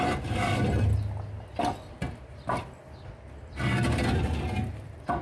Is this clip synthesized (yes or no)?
no